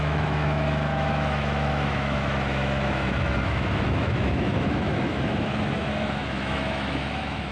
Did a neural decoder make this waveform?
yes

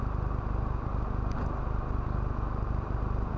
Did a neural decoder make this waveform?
no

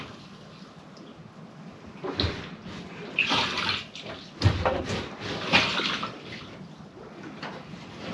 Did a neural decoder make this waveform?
no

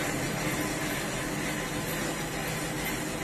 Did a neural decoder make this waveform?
no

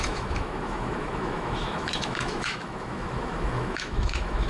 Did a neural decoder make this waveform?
yes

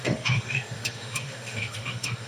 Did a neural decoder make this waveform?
yes